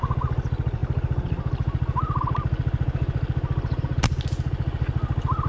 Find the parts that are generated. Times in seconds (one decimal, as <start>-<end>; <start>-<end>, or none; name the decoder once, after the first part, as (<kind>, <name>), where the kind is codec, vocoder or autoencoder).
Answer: none

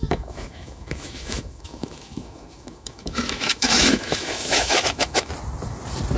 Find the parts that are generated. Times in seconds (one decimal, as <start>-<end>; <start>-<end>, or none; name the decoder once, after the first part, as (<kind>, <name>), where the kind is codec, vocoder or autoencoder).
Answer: 0.0-5.3 (autoencoder, DAC-VAE)

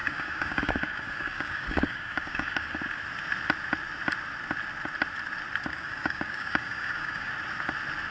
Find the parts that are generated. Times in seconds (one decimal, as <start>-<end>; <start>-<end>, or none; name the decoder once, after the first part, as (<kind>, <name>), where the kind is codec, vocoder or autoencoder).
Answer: 0.0-2.8 (codec, DAC); 5.7-7.3

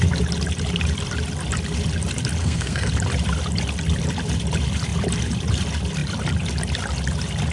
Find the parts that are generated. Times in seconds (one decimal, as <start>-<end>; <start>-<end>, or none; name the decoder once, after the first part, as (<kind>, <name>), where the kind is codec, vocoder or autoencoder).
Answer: 2.4-2.9 (codec, SNAC)

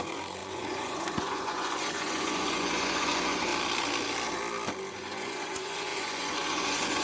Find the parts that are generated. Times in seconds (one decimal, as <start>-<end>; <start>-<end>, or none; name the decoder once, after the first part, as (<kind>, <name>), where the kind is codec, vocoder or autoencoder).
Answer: 0.0-3.5 (vocoder, Vocos); 4.9-7.0

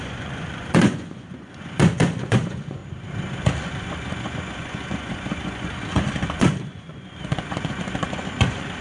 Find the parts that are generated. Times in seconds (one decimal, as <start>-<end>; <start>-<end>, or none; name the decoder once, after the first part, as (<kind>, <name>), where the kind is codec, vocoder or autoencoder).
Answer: 0.0-2.8 (vocoder, Vocos); 3.4-8.8

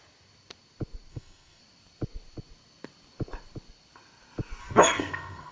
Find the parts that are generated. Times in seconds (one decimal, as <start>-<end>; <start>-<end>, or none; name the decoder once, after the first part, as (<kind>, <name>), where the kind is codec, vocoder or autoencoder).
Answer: 1.1-1.6 (codec, SNAC); 4.6-5.5

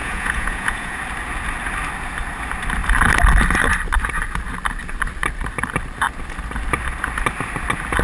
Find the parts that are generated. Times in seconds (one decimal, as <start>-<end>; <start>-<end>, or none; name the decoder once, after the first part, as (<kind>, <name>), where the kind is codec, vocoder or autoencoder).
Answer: 0.0-1.0 (vocoder, Vocos)